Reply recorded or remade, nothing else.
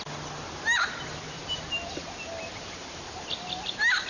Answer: recorded